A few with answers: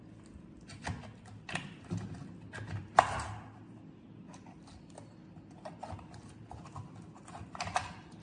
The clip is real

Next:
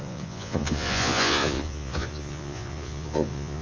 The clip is fake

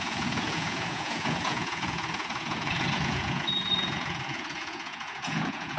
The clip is fake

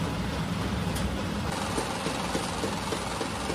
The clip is real